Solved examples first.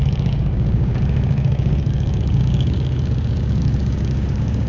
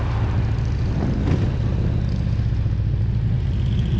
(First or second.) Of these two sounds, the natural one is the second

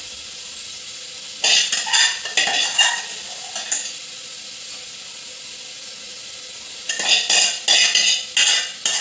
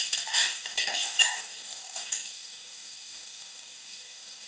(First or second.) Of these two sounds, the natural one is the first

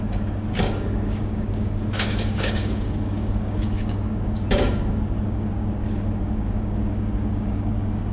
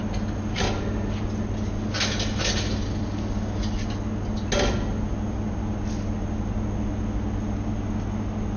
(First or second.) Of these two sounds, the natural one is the second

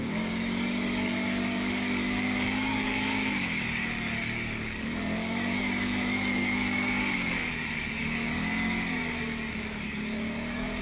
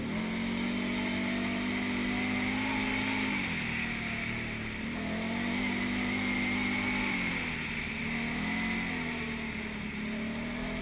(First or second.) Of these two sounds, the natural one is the second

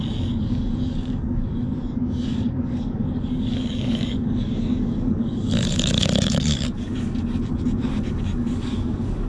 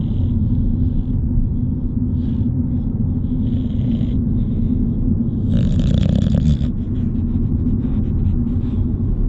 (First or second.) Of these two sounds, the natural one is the second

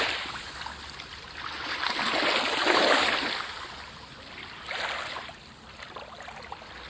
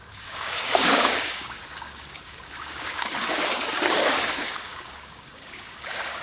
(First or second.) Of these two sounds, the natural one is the first